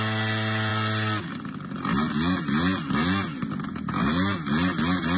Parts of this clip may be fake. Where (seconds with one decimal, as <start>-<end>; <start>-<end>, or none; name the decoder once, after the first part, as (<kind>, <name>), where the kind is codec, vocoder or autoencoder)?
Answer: none